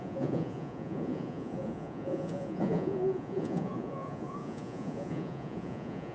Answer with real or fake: fake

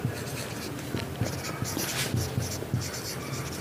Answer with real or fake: real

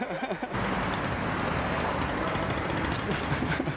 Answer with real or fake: real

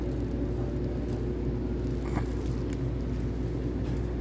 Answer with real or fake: real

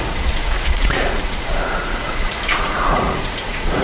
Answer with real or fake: fake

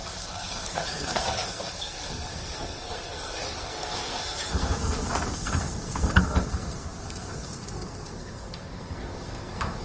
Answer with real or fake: fake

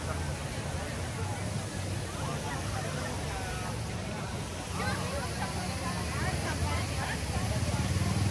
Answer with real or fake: real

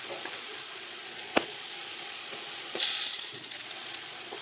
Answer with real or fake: fake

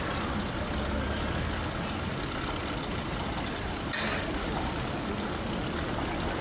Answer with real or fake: real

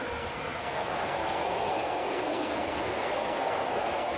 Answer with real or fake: fake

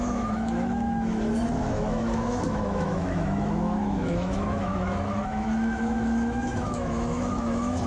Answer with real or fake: fake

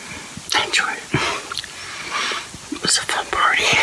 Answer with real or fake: real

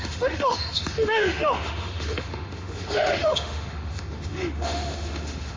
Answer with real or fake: fake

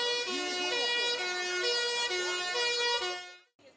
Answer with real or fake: real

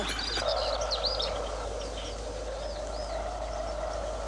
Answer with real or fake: real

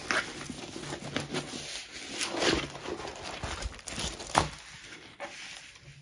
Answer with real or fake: real